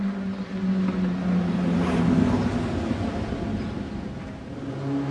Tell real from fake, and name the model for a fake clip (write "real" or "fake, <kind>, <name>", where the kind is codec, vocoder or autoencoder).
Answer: real